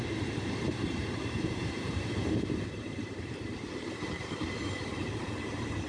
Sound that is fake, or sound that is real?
fake